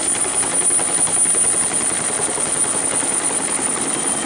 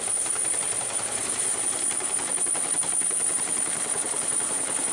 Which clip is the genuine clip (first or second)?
first